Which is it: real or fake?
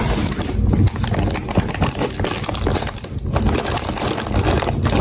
fake